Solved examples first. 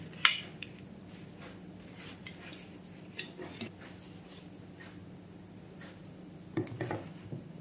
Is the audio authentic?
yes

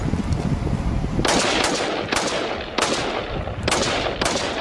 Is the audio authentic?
yes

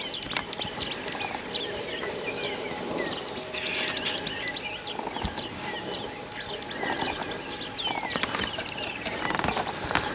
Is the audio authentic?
yes